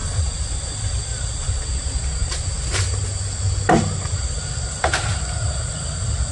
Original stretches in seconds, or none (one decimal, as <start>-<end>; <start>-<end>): 0.0-6.3